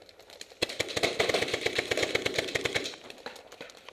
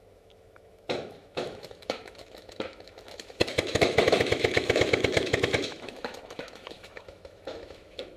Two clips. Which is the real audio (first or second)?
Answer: first